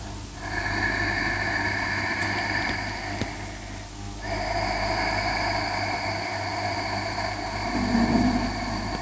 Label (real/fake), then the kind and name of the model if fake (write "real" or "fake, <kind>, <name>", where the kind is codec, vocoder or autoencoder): real